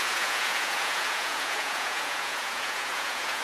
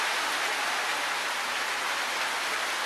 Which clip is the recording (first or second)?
second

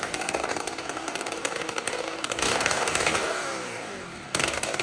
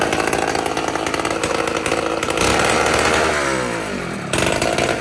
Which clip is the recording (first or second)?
second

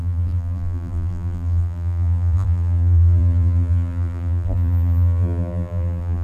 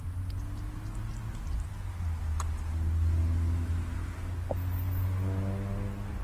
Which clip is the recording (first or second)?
second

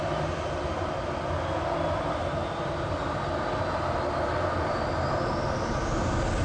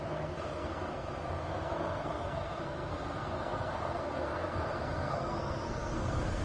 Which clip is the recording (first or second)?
first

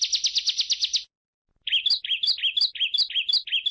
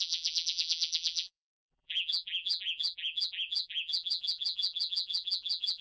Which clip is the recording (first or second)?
first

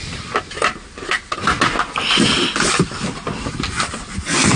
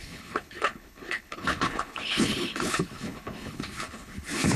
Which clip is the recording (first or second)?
first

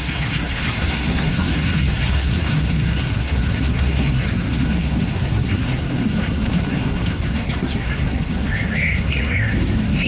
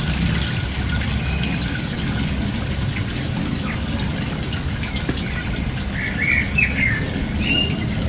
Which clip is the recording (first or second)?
second